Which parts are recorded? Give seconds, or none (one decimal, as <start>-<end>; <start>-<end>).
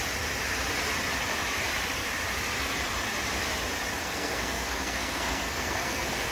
0.0-4.0